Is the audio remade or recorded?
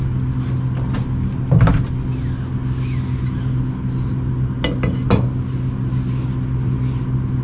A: recorded